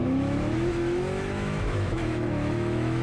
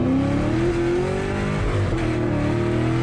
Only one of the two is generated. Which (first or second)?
first